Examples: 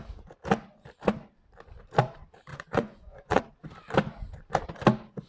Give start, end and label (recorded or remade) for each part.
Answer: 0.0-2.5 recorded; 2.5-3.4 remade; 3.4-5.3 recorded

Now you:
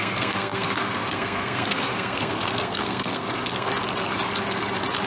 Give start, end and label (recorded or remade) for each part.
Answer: 0.0-3.7 remade; 3.7-5.1 recorded